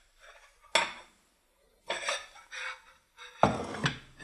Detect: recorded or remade recorded